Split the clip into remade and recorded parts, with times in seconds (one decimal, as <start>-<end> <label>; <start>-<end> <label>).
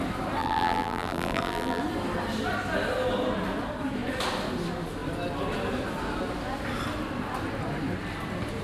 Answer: 0.0-0.4 recorded; 0.4-1.8 remade; 1.8-8.6 recorded